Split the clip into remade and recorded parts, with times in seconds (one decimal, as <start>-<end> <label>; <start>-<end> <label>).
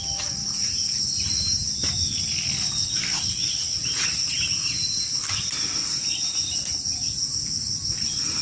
0.0-8.4 recorded